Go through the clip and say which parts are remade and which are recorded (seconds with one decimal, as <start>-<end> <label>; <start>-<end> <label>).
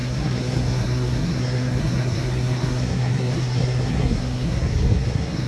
0.0-5.5 remade